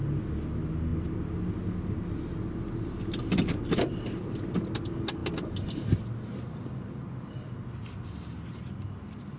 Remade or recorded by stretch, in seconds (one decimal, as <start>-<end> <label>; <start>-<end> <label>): 0.0-9.4 recorded